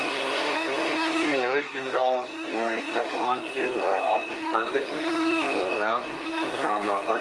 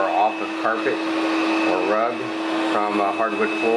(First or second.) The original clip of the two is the second